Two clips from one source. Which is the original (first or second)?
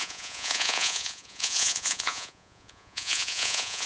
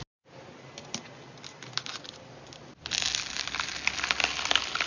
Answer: second